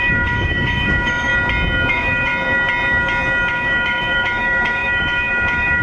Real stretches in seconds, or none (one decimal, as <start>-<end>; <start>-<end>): 1.3-1.9; 2.3-3.5